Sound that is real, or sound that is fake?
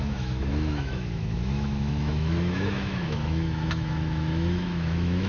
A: fake